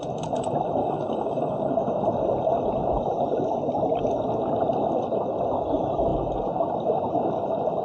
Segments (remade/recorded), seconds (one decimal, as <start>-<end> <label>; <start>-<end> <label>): 0.0-0.8 recorded; 0.8-1.7 remade; 1.7-7.8 recorded